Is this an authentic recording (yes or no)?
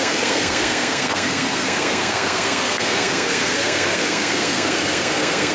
no